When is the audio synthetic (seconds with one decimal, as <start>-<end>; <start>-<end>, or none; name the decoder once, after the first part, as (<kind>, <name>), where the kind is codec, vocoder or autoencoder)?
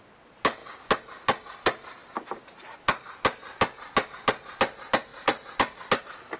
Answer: none